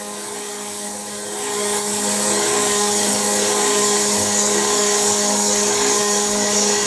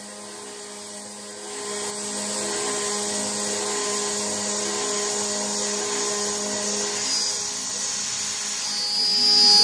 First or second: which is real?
second